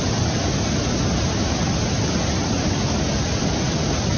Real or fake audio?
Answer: real